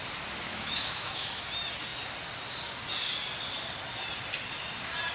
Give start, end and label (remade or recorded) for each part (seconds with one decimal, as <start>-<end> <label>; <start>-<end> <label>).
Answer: 0.0-0.5 recorded; 0.5-1.4 remade; 1.4-5.1 recorded

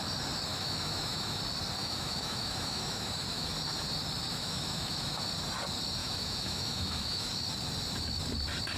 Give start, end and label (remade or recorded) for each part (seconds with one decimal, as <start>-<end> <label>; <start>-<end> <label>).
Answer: 0.0-0.5 recorded; 0.5-1.4 remade; 1.4-1.8 recorded; 1.8-3.5 remade; 3.5-4.3 recorded; 4.3-5.2 remade; 5.2-6.0 recorded; 6.0-7.3 remade; 7.3-8.8 recorded

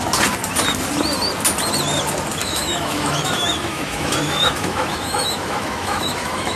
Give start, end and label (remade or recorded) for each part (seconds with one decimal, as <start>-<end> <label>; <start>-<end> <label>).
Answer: 0.0-2.4 recorded; 2.4-6.6 remade

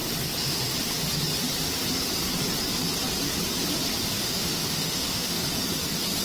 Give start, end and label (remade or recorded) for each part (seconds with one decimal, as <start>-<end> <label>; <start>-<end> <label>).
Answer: 0.0-4.2 recorded; 4.2-5.4 remade; 5.4-6.2 recorded

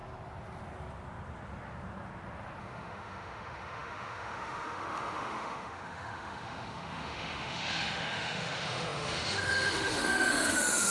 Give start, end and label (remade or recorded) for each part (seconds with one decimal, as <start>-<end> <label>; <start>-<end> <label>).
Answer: 0.0-2.6 recorded; 2.6-10.9 remade

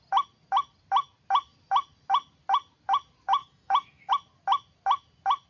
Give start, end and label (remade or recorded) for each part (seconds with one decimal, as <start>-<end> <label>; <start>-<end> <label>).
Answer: 0.0-3.4 recorded; 3.4-4.1 remade; 4.1-5.5 recorded

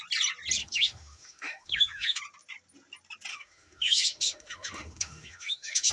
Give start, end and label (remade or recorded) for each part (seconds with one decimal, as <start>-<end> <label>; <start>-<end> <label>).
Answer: 0.0-0.6 recorded; 0.6-2.2 remade; 2.2-3.3 recorded; 3.3-5.9 remade